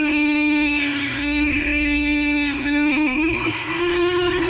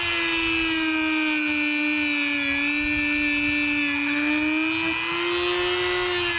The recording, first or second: second